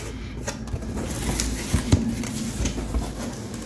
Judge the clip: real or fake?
real